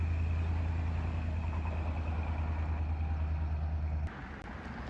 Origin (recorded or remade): recorded